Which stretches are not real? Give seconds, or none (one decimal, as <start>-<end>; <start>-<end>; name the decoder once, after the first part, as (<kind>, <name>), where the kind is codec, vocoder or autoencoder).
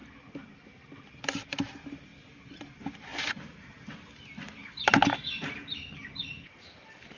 3.1-3.9 (vocoder, BigVGAN v2)